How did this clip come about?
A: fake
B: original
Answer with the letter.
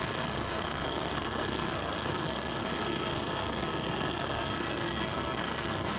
A